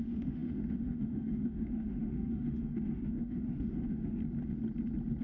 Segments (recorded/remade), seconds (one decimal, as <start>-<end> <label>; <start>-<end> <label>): 0.0-4.2 remade; 4.2-5.2 recorded